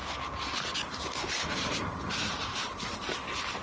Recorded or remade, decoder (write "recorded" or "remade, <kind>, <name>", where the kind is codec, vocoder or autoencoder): recorded